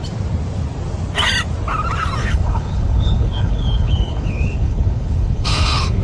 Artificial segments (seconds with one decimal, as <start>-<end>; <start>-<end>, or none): 2.2-6.0